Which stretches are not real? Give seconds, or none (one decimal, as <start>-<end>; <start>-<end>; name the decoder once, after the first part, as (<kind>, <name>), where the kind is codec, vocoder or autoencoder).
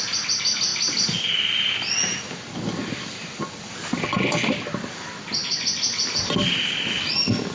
none